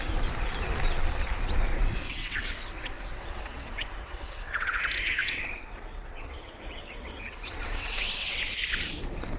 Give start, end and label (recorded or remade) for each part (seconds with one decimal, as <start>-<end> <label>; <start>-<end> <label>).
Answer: 0.0-1.7 recorded; 1.7-4.8 remade; 4.8-5.2 recorded; 5.2-8.4 remade; 8.4-9.4 recorded